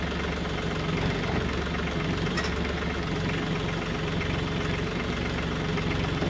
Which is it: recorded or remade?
recorded